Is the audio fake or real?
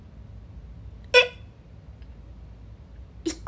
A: real